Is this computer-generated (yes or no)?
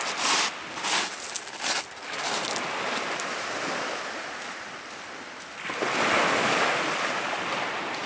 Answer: no